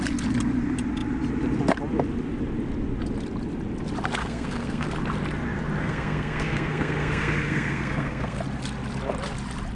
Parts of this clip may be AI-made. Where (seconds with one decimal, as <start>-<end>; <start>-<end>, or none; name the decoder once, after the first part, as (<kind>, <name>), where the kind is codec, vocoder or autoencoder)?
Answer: 4.2-4.9 (codec, SNAC); 5.8-8.4